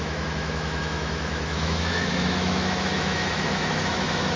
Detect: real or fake fake